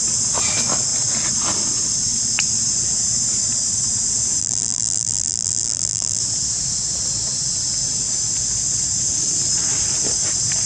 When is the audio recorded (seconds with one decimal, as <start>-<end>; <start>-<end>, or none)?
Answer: 0.0-4.4; 6.2-10.7